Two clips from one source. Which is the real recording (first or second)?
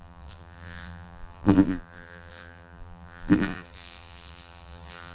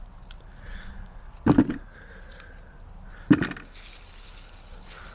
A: second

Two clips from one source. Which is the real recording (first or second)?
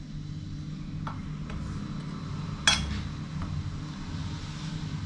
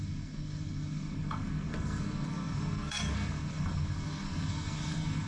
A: first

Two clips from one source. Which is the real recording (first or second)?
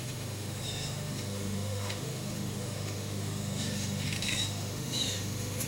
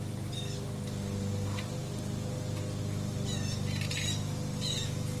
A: second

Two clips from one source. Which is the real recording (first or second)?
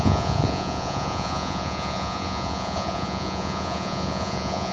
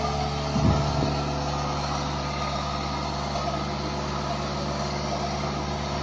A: second